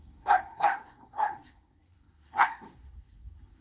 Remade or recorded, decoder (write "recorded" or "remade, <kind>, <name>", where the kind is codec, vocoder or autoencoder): remade, codec, SNAC